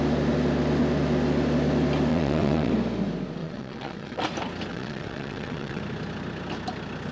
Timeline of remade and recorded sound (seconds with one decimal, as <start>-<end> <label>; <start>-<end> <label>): 0.0-2.1 recorded; 2.1-2.7 remade; 2.7-3.4 recorded; 3.4-4.2 remade; 4.2-4.7 recorded; 4.7-5.8 remade; 5.8-7.1 recorded